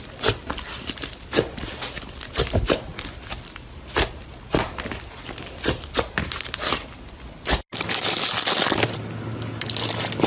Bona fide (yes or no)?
yes